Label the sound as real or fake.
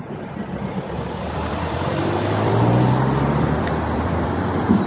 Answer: fake